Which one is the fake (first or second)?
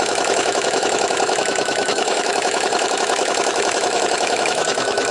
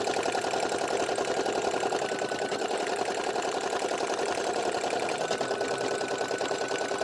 first